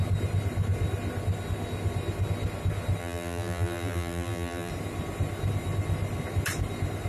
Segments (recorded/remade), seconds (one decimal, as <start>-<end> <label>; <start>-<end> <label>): 0.0-3.0 recorded; 3.0-4.7 remade; 4.7-7.1 recorded